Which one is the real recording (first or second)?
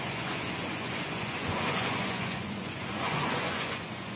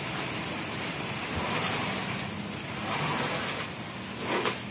second